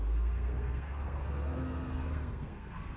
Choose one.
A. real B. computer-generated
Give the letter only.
B